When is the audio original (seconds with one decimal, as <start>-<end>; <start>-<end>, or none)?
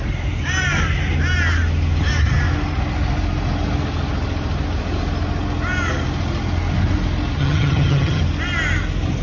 0.0-7.4; 8.2-9.2